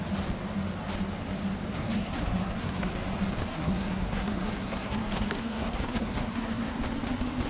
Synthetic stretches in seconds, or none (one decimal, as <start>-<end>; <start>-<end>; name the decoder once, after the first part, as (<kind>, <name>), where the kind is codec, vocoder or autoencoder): 1.7-2.9 (codec, SNAC); 3.5-6.8